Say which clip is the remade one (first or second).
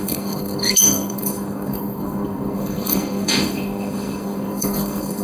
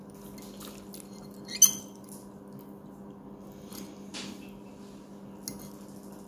first